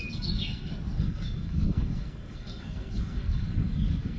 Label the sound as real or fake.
fake